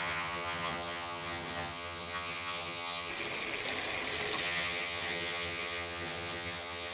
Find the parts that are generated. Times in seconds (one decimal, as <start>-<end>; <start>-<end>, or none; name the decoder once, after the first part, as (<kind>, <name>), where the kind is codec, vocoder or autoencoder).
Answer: 0.0-3.1 (vocoder, HiFi-GAN); 4.4-6.9